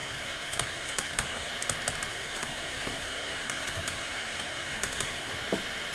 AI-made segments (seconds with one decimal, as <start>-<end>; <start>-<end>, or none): 0.0-1.5; 2.1-5.3